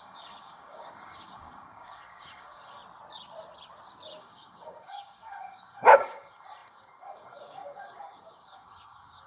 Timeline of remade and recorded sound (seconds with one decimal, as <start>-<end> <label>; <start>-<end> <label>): 0.0-2.8 remade; 2.8-4.2 recorded; 4.2-9.3 remade